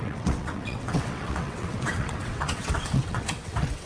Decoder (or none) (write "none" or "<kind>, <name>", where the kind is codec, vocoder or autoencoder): vocoder, WaveNeXt